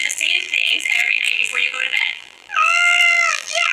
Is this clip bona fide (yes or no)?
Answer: no